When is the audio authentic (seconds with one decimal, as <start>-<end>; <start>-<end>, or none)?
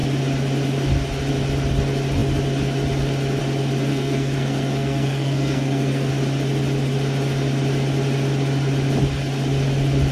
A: 0.0-3.9; 6.1-10.1